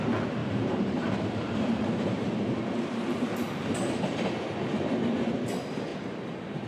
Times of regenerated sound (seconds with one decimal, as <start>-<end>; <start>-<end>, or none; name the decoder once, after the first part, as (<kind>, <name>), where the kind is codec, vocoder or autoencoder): 0.4-4.3 (vocoder, BigVGAN v2); 5.9-6.7